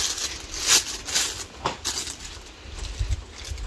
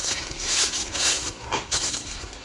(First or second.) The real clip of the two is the first